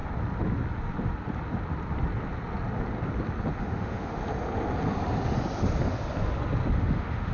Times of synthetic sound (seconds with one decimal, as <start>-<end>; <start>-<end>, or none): 3.6-4.2; 6.7-7.3